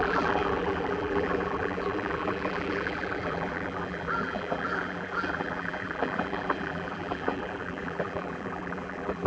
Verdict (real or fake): fake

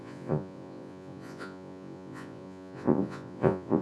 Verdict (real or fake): fake